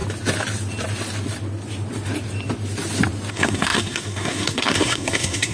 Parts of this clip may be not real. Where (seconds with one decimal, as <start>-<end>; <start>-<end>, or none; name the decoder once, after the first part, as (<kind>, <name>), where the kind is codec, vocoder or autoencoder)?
3.3-5.5 (codec, SNAC)